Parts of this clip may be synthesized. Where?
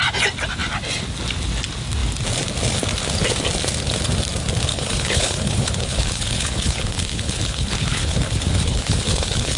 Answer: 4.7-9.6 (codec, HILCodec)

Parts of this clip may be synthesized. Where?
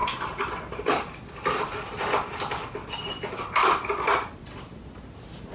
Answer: none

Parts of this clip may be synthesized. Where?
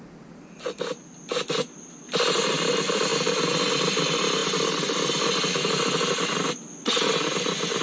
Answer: 3.1-3.6 (vocoder, BigVGAN v2)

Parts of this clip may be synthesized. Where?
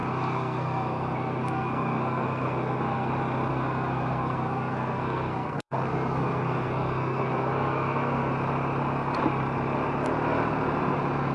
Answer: 0.0-3.1 (codec, SNAC); 3.5-8.3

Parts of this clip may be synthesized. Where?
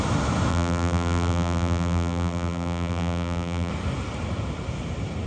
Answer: 0.5-3.7 (vocoder, BigVGAN v2)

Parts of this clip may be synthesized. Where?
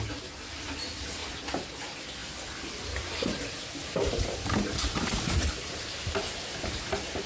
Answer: none